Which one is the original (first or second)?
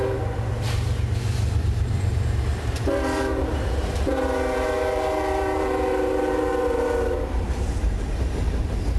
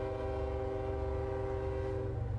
second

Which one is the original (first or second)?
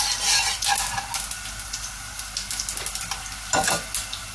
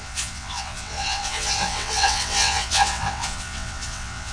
first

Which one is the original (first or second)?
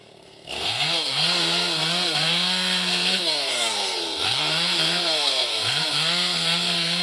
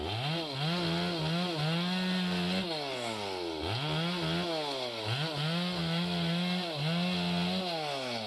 second